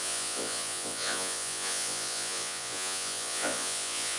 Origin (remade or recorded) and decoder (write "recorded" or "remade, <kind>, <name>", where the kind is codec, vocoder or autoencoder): remade, vocoder, Vocos